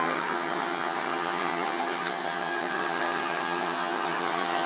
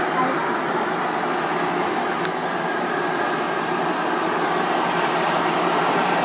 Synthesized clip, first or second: first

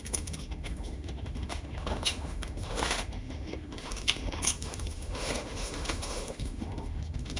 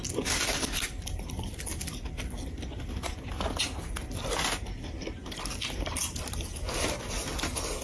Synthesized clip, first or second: first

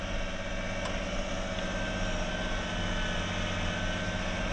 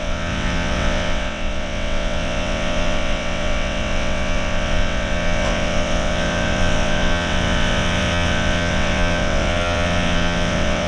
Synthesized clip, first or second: second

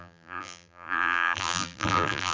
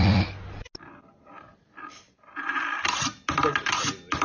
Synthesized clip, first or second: first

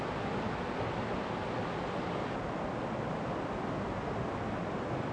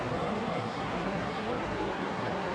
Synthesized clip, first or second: second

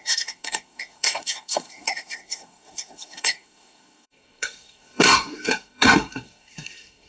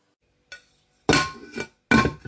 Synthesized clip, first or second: first